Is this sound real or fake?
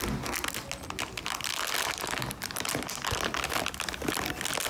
real